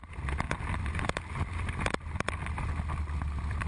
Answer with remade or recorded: recorded